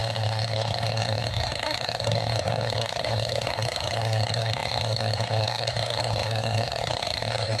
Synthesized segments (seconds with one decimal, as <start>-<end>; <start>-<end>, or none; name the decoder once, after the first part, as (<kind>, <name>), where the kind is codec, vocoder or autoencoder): 0.0-7.6 (codec, SNAC)